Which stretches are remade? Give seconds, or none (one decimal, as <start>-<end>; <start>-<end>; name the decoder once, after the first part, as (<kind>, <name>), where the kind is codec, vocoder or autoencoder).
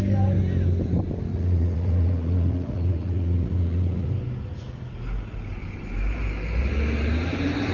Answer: 1.3-4.1 (vocoder, Vocos)